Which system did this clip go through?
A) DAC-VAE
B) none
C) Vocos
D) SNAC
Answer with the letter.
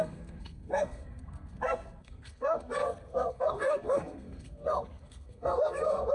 D